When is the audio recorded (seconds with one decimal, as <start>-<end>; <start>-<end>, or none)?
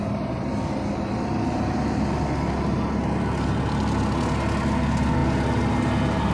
0.0-6.3